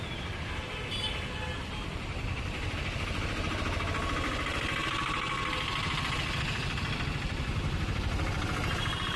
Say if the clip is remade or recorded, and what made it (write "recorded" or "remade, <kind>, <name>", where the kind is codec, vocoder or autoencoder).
recorded